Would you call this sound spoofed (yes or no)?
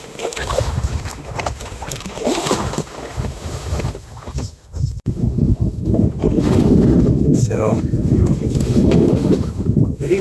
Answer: yes